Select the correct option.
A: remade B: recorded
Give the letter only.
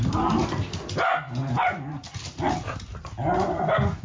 B